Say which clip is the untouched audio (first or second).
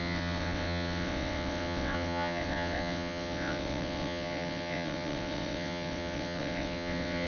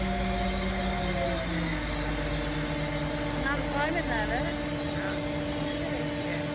second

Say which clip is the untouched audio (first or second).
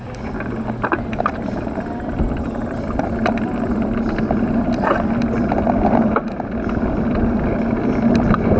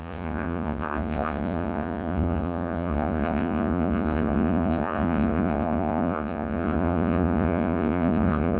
first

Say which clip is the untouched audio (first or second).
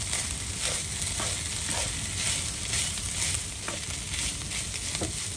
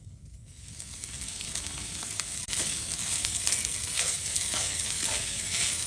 first